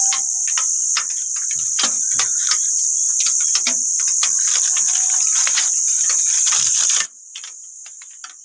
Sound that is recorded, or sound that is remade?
remade